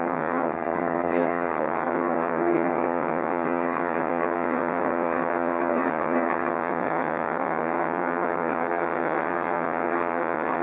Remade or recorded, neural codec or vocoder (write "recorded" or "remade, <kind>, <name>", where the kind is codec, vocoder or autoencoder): remade, vocoder, HiFi-GAN